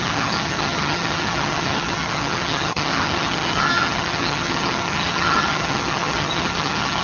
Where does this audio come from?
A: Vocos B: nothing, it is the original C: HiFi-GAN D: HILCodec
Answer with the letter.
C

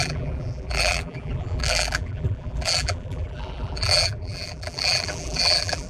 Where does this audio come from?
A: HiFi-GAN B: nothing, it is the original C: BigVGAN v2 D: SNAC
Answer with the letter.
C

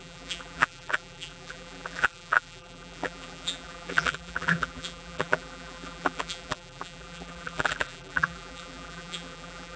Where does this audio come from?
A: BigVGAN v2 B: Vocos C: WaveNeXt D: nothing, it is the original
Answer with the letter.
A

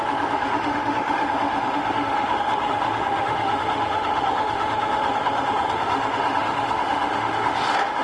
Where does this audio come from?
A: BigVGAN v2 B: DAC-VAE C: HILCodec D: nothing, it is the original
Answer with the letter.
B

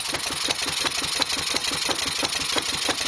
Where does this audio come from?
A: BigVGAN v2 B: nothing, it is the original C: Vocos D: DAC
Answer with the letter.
B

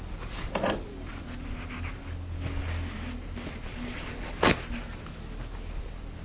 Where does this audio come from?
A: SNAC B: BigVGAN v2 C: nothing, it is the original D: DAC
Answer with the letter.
C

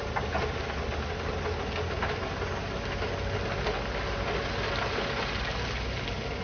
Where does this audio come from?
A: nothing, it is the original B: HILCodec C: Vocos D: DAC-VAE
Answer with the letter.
A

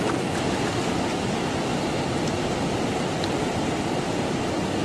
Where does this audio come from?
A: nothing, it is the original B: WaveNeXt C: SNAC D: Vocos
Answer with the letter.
A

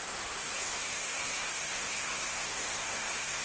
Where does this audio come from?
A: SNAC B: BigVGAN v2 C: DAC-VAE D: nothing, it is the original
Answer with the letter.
A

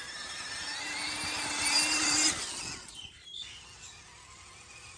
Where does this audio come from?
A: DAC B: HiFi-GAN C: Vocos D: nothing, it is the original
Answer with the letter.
D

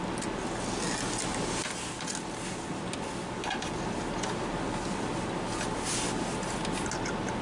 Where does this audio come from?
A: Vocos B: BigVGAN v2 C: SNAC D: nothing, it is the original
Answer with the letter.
D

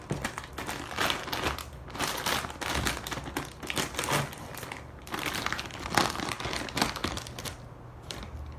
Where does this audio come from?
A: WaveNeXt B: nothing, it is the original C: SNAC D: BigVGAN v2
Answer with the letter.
B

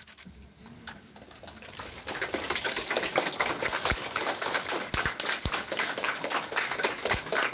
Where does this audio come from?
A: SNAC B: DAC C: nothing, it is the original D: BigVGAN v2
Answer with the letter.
B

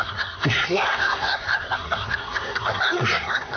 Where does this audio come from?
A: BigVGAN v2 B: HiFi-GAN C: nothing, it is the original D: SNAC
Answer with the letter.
D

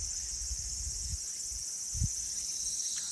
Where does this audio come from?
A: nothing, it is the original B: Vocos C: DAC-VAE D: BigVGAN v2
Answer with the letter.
A